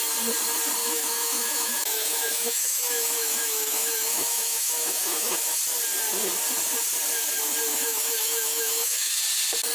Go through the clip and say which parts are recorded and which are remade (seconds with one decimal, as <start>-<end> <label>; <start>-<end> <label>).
0.0-0.8 recorded; 0.8-5.6 remade; 5.6-7.7 recorded; 7.7-9.2 remade; 9.2-9.7 recorded